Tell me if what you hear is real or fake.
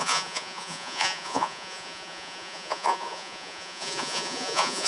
fake